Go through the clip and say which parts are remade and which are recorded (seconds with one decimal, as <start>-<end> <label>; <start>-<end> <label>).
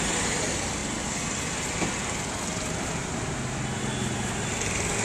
0.0-5.0 recorded